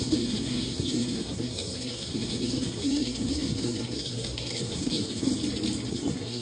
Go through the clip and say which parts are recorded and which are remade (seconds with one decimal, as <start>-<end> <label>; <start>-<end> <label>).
0.0-5.3 remade; 5.3-5.9 recorded; 5.9-6.4 remade